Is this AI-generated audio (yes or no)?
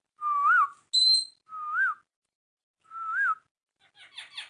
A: no